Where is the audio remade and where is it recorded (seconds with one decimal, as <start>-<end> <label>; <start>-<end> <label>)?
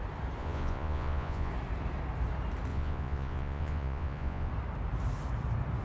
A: 0.0-0.4 recorded; 0.4-1.5 remade; 1.5-2.7 recorded; 2.7-4.5 remade; 4.5-5.8 recorded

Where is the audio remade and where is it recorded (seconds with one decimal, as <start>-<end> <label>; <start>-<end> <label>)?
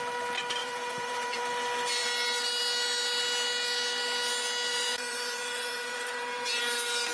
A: 0.0-0.6 recorded; 0.6-1.4 remade; 1.4-4.7 recorded; 4.7-6.6 remade; 6.6-7.1 recorded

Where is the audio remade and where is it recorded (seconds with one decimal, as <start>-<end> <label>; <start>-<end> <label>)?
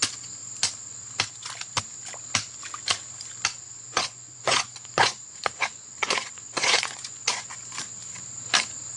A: 0.0-3.9 recorded; 3.9-7.6 remade; 7.6-9.0 recorded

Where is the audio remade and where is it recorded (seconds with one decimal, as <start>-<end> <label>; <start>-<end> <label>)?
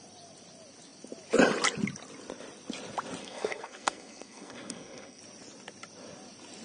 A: 0.0-3.2 recorded; 3.2-5.2 remade; 5.2-6.6 recorded